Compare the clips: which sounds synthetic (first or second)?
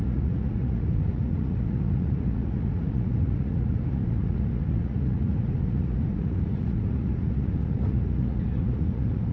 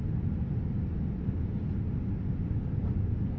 first